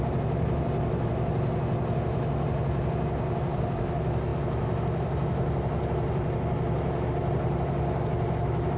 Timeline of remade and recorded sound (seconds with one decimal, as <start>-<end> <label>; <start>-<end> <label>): 0.0-8.8 recorded